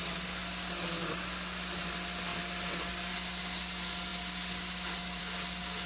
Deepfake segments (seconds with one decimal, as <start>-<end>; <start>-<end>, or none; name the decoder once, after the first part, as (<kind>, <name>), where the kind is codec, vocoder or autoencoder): none

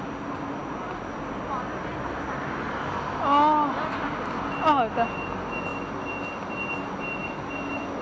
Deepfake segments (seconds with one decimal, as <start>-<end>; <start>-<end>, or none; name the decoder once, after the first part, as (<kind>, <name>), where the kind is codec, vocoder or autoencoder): none